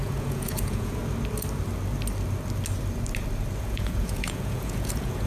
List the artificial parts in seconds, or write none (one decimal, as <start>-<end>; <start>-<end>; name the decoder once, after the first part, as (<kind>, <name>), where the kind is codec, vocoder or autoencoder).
0.0-1.0 (vocoder, Vocos); 3.6-5.3